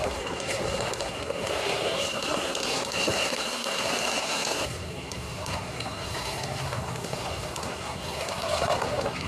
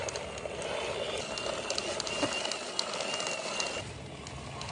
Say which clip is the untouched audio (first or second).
second